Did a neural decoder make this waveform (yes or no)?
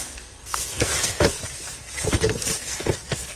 yes